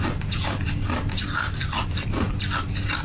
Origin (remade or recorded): recorded